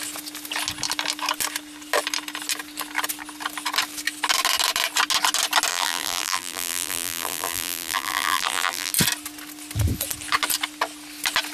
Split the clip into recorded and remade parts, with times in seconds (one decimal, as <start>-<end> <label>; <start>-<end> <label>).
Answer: 0.0-5.7 recorded; 5.7-8.9 remade; 8.9-11.5 recorded